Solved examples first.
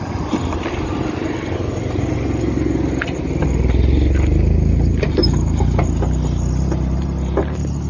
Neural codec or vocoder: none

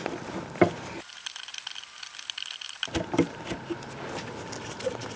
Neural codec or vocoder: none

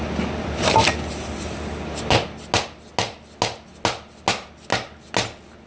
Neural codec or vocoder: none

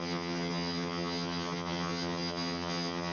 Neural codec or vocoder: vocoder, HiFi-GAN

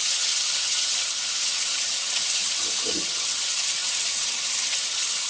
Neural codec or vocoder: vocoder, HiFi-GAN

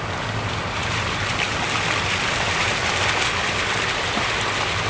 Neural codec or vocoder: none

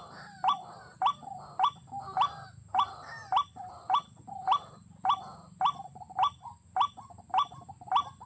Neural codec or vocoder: none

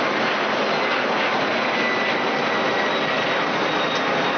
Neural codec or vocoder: none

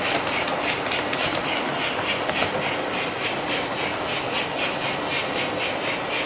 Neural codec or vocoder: none